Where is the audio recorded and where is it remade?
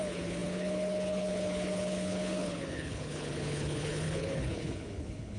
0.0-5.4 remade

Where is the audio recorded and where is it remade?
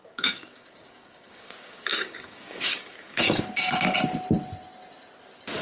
0.0-3.4 remade; 3.4-5.6 recorded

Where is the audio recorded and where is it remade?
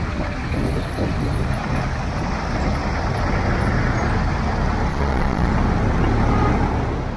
0.0-4.9 recorded; 4.9-5.5 remade; 5.5-7.2 recorded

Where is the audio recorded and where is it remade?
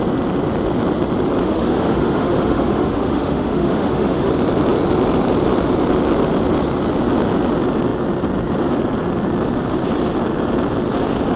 0.0-1.4 recorded; 1.4-4.3 remade; 4.3-11.4 recorded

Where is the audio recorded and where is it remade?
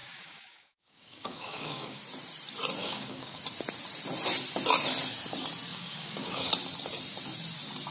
0.0-2.0 remade; 2.0-2.8 recorded; 2.8-3.4 remade; 3.4-5.7 recorded; 5.7-6.5 remade; 6.5-7.9 recorded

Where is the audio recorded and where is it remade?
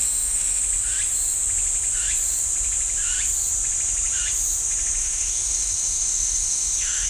0.0-0.6 remade; 0.6-5.0 recorded; 5.0-7.1 remade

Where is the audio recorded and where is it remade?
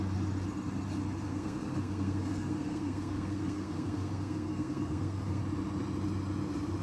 0.0-1.3 recorded; 1.3-5.4 remade; 5.4-6.8 recorded